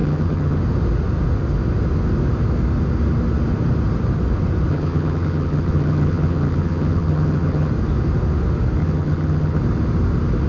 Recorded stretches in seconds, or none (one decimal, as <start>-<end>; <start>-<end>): 0.6-4.7; 7.7-8.8; 9.6-10.5